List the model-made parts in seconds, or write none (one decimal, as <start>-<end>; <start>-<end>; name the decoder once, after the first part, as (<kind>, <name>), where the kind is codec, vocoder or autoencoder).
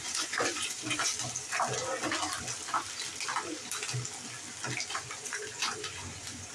0.0-1.1 (vocoder, Vocos); 4.9-6.5